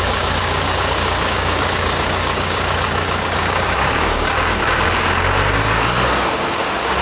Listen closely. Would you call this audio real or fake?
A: fake